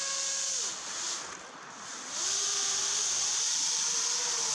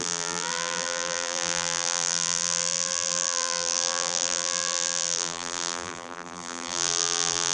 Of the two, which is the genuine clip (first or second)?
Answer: first